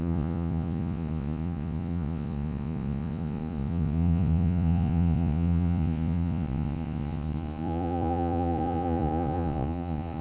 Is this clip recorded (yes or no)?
no